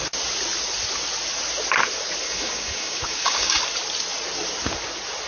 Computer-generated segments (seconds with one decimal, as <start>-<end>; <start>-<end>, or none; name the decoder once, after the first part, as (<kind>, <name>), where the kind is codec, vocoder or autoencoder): 2.2-3.6 (codec, DAC)